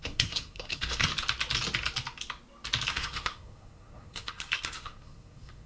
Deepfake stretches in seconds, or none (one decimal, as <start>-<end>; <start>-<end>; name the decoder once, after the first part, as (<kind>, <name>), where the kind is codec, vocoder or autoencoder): 0.0-1.1 (codec, SNAC); 2.9-5.7